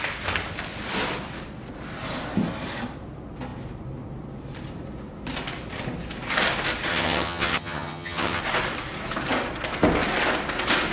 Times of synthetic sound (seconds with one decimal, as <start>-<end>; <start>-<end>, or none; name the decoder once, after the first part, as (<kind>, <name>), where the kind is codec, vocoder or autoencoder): 6.9-8.4 (vocoder, HiFi-GAN)